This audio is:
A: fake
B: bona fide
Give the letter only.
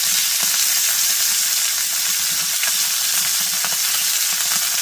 A